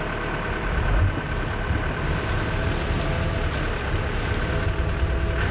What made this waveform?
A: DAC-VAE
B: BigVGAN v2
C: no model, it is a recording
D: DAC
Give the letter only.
C